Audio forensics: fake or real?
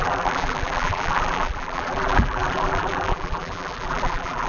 fake